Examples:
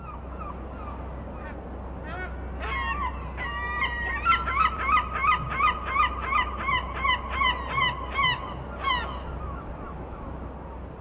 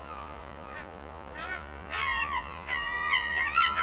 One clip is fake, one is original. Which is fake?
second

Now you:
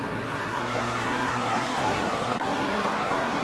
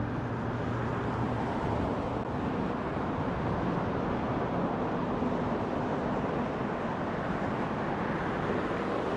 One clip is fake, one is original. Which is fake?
first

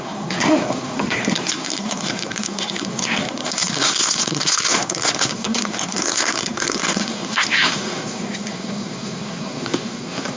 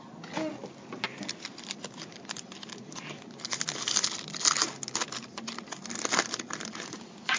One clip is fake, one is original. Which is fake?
first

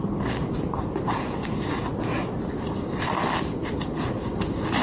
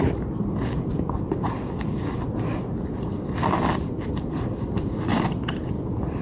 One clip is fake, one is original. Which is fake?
second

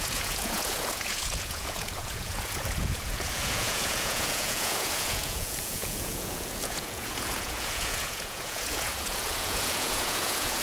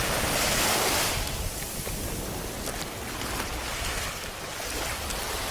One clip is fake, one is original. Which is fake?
first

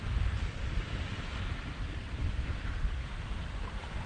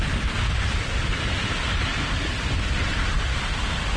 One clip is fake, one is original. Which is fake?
first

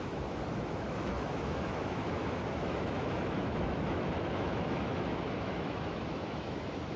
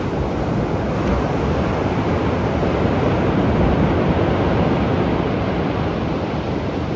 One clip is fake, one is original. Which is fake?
first